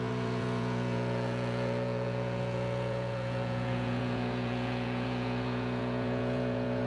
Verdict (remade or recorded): remade